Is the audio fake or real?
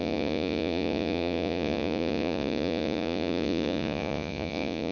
fake